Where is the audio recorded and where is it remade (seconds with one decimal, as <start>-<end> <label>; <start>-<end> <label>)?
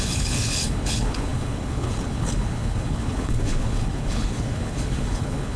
0.0-5.6 remade